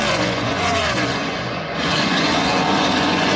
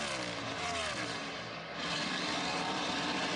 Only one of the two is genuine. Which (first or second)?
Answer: second